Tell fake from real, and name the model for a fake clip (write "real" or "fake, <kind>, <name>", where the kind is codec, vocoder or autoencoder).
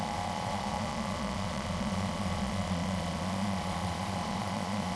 fake, vocoder, Vocos